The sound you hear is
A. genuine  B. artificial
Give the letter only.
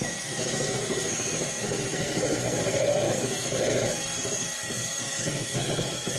B